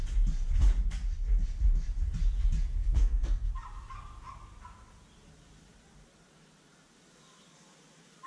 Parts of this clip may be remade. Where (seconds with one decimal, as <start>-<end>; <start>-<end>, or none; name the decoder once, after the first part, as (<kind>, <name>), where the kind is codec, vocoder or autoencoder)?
2.8-3.5 (codec, SNAC)